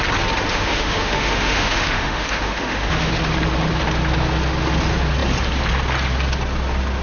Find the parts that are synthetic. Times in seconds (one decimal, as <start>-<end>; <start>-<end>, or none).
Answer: 0.5-3.1